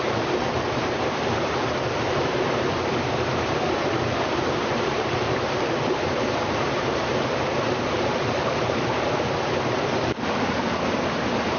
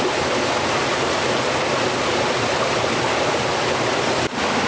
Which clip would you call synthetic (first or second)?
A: first